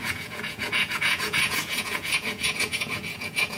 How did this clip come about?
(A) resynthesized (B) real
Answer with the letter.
A